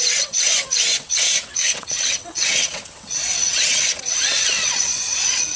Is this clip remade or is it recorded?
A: remade